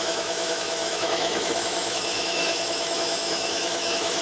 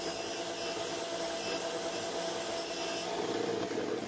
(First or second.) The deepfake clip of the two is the first